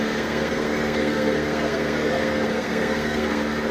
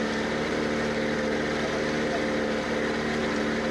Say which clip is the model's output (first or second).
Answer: first